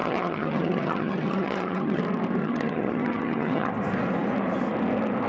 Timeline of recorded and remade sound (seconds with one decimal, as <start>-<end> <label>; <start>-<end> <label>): 0.0-2.0 remade; 2.0-2.4 recorded; 2.4-3.7 remade; 3.7-5.3 recorded